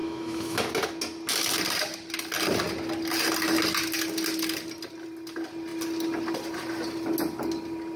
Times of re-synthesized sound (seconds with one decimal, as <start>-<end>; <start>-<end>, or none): 0.0-0.6